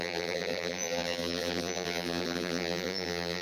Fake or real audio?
fake